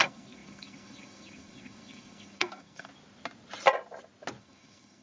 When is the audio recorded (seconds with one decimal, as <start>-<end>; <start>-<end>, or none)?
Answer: 2.9-4.4